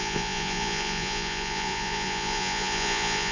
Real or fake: fake